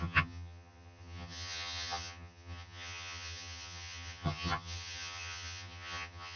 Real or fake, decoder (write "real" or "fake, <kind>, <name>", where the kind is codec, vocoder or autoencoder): fake, vocoder, HiFi-GAN